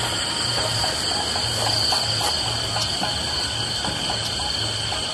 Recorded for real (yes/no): yes